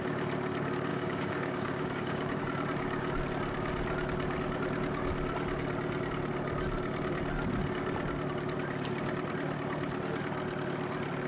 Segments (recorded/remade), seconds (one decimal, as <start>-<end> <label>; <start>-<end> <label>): 0.0-0.9 recorded; 0.9-2.4 remade; 2.4-11.3 recorded